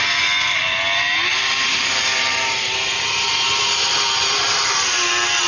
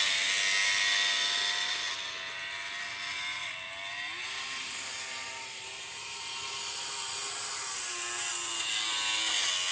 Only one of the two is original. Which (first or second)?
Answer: second